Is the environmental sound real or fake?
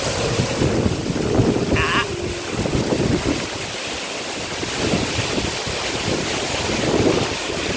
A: real